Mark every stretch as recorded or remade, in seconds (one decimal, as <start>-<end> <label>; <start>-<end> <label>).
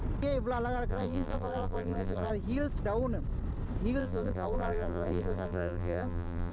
0.0-0.9 recorded; 0.9-2.3 remade; 2.3-4.0 recorded; 4.0-6.5 remade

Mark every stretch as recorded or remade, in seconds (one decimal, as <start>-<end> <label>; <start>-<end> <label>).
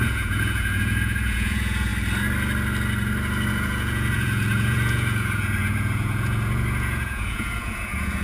0.0-1.9 remade; 1.9-3.5 recorded; 3.5-8.2 remade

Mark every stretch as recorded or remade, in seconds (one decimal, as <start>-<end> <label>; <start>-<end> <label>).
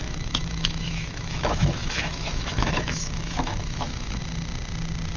0.0-4.2 remade; 4.2-5.2 recorded